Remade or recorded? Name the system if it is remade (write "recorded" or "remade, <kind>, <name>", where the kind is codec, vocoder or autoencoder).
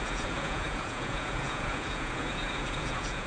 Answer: remade, vocoder, Vocos